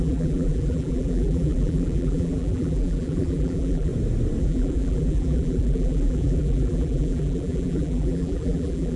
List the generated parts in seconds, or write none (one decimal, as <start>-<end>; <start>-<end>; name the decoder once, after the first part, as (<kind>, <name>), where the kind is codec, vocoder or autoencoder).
0.0-3.9 (vocoder, BigVGAN v2); 4.4-9.0